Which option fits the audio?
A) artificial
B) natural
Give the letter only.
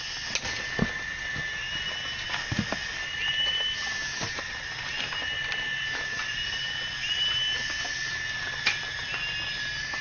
B